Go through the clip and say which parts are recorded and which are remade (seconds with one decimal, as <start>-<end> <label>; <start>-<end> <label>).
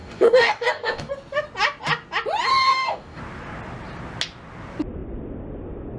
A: 0.0-1.1 remade; 1.1-2.5 recorded; 2.5-3.2 remade; 3.2-6.0 recorded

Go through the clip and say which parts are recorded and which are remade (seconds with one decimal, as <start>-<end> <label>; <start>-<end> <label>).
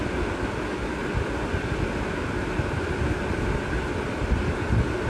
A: 0.0-5.1 recorded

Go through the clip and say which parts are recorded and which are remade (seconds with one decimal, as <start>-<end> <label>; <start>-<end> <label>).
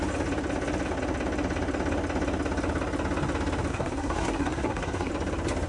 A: 0.0-3.7 recorded; 3.7-5.1 remade; 5.1-5.7 recorded